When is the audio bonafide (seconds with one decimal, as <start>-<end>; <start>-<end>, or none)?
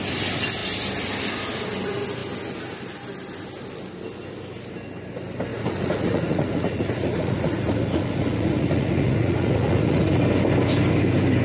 0.0-5.5; 10.2-11.4